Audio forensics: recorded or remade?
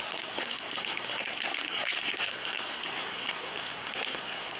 remade